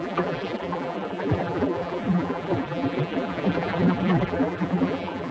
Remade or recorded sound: remade